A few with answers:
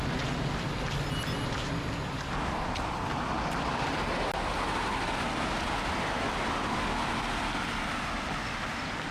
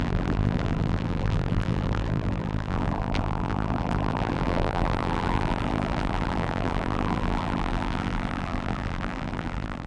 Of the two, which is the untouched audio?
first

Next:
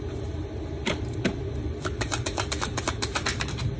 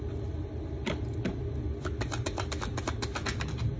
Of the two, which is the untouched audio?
second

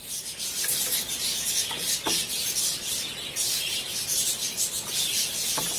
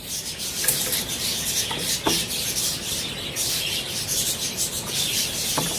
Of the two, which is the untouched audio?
first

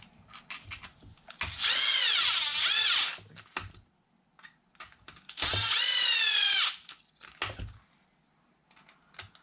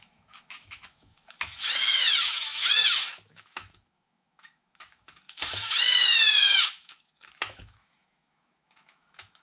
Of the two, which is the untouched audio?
first